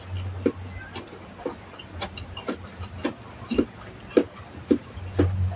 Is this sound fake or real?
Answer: real